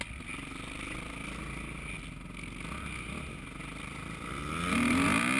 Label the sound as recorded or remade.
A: recorded